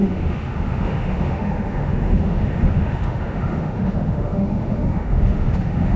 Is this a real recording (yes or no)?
no